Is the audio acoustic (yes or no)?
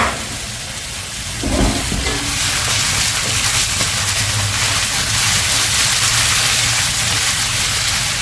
yes